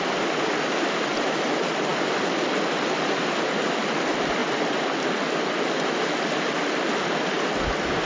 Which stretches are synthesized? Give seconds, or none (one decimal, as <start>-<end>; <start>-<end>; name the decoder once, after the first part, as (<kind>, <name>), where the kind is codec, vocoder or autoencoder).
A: none